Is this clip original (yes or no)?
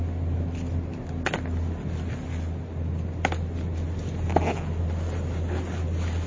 yes